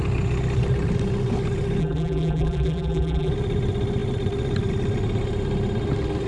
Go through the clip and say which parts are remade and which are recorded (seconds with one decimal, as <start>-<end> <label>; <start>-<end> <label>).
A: 0.0-1.8 recorded; 1.8-3.3 remade; 3.3-6.3 recorded